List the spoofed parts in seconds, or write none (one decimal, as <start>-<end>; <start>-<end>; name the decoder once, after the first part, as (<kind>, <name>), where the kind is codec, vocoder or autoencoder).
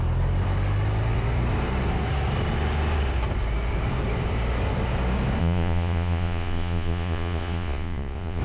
5.4-8.4 (vocoder, Vocos)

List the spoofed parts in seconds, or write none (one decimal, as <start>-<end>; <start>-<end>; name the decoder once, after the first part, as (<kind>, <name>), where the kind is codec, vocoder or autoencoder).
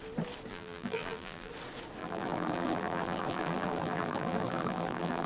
0.5-1.5 (vocoder, BigVGAN v2); 2.0-5.3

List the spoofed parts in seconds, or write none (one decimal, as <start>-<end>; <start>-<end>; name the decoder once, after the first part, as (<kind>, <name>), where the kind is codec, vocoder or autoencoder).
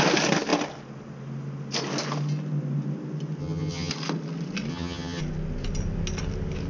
3.4-3.9 (vocoder, HiFi-GAN); 4.7-5.2